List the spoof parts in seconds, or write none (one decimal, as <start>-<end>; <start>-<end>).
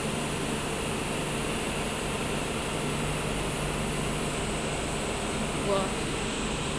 none